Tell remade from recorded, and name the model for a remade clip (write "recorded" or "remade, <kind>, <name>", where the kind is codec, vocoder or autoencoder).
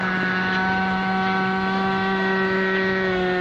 remade, autoencoder, DAC-VAE